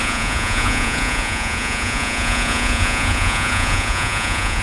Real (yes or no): no